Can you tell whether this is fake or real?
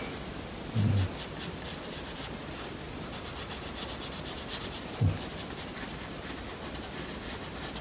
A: real